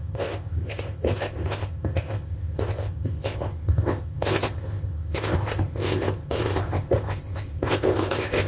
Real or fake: fake